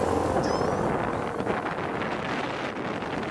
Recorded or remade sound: recorded